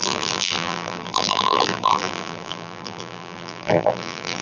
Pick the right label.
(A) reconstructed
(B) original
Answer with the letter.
A